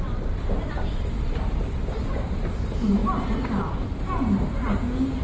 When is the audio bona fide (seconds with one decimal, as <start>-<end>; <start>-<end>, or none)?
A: 0.0-5.2

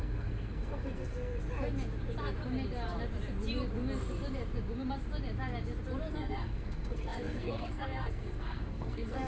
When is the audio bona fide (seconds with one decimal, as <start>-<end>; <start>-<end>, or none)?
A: 1.4-6.1

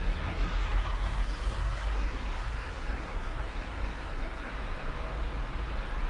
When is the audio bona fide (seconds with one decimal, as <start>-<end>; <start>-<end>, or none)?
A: 4.5-6.1